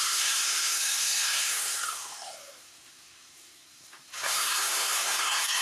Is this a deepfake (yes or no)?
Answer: yes